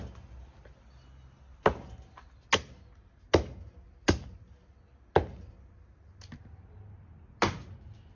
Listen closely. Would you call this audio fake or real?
real